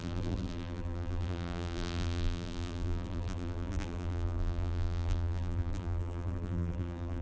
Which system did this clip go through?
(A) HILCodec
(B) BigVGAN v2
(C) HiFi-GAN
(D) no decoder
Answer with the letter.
B